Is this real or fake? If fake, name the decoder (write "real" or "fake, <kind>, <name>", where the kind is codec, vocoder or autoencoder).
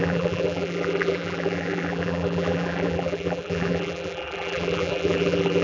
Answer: fake, vocoder, BigVGAN v2